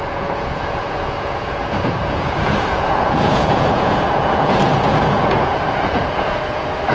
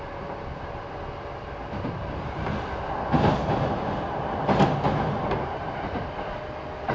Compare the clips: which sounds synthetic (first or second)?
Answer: first